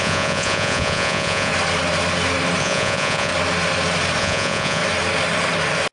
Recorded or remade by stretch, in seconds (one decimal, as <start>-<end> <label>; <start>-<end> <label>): 0.0-1.5 remade; 1.5-2.6 recorded; 2.6-3.3 remade; 3.3-4.2 recorded; 4.2-4.8 remade; 4.8-5.9 recorded

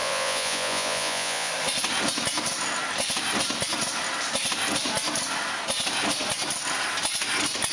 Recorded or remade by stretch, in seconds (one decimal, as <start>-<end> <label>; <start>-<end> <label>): 0.0-1.5 remade; 1.5-7.7 recorded

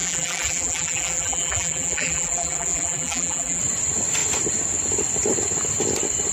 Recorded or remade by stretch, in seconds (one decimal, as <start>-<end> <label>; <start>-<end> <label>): 0.0-3.6 remade; 3.6-6.3 recorded